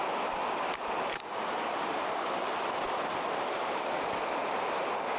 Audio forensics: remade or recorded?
recorded